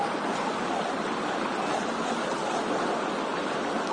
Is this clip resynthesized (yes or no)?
no